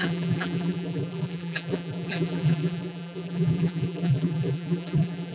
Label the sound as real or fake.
fake